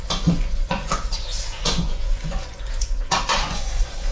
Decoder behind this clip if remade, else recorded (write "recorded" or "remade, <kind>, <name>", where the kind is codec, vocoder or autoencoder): remade, vocoder, Vocos